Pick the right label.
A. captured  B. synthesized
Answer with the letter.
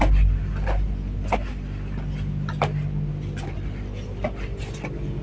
A